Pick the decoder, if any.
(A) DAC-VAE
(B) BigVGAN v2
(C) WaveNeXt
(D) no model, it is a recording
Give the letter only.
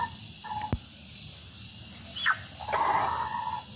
D